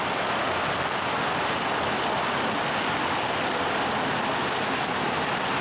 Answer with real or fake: real